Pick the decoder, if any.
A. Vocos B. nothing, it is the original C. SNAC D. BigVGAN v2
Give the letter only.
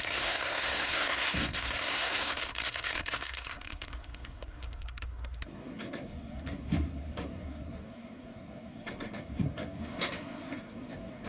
C